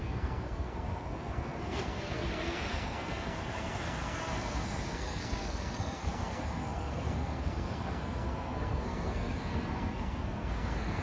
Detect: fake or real fake